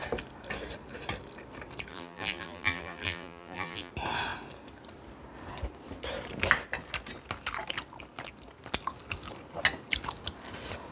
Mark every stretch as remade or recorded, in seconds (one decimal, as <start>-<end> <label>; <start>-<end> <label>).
0.0-1.9 recorded; 1.9-3.9 remade; 3.9-10.9 recorded